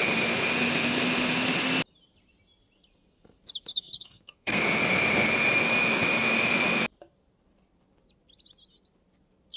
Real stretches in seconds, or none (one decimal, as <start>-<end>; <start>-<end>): 0.0-3.7; 4.6-9.6